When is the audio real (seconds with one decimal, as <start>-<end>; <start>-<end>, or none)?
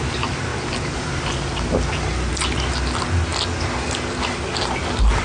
0.0-5.2